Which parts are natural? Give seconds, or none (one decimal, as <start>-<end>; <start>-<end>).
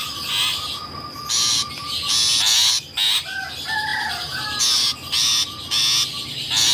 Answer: 0.0-3.9; 4.6-6.7